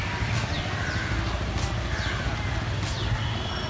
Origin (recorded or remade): recorded